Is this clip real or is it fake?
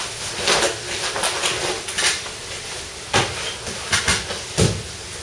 real